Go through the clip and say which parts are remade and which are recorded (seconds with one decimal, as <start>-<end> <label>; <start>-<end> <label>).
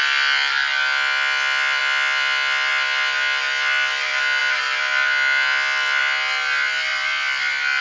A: 0.0-7.8 recorded